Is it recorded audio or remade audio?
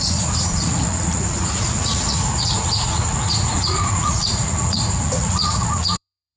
remade